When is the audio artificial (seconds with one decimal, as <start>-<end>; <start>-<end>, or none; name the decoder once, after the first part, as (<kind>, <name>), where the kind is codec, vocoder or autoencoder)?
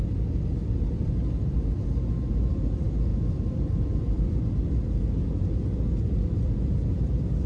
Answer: 3.1-4.7 (vocoder, BigVGAN v2)